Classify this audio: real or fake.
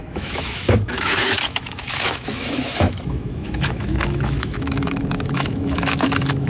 fake